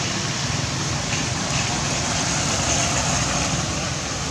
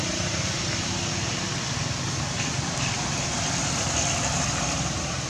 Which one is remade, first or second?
first